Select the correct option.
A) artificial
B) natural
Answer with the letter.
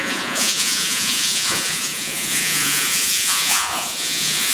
A